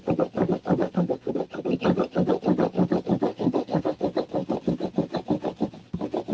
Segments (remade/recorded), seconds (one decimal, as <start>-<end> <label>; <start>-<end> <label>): 0.0-0.8 recorded; 0.8-1.3 remade; 1.3-3.3 recorded; 3.3-4.0 remade; 4.0-6.3 recorded